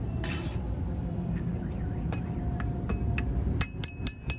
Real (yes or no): yes